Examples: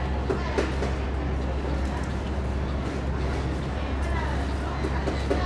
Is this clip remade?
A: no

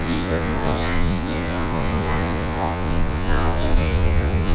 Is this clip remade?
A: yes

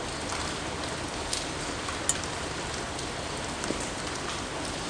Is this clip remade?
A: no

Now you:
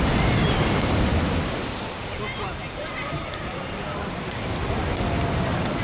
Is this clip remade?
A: no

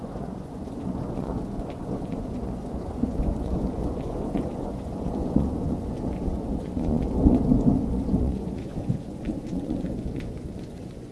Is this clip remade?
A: yes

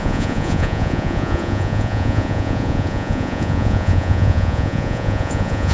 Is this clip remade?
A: yes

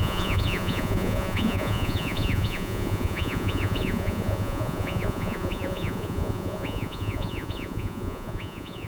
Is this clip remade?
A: yes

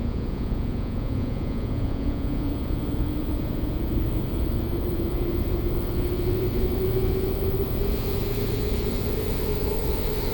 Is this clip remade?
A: yes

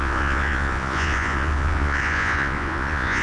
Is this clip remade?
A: yes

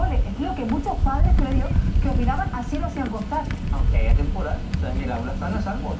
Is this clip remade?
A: no